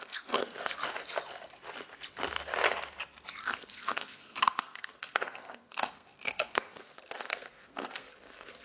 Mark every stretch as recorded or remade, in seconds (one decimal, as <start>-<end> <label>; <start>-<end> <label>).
0.0-0.7 remade; 0.7-3.4 recorded; 3.4-8.6 remade